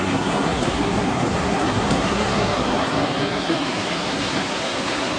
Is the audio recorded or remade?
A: remade